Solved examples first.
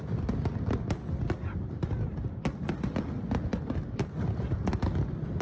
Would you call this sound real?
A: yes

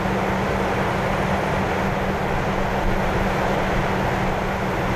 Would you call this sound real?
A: yes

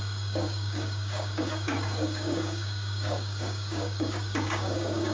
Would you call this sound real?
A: no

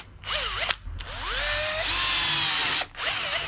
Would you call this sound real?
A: yes